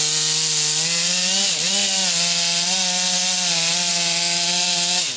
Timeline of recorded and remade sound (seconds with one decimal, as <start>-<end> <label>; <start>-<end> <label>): 0.0-5.2 recorded